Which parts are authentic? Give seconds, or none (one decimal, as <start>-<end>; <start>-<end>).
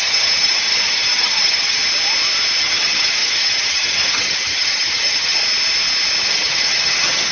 1.8-2.6; 5.4-6.2